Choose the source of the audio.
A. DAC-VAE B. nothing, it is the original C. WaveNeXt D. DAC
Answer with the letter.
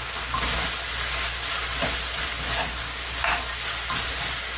B